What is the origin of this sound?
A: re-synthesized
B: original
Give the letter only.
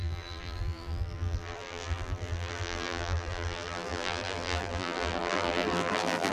A